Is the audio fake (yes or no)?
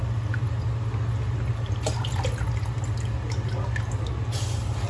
no